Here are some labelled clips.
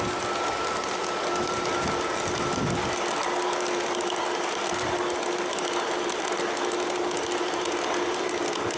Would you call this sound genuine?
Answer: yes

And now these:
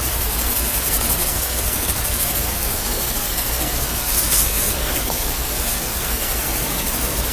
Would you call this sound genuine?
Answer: no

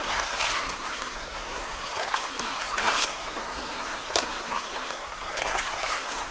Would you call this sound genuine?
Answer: no